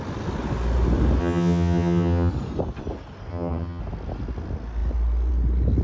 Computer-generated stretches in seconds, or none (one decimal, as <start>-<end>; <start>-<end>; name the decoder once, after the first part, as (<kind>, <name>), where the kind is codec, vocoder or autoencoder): 1.2-2.3 (vocoder, HiFi-GAN); 3.3-3.8